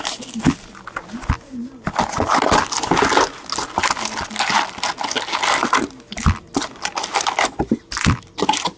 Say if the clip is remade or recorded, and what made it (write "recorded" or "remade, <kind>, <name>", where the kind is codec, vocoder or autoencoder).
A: recorded